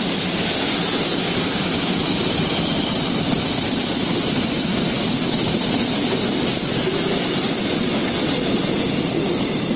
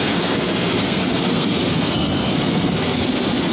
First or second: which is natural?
first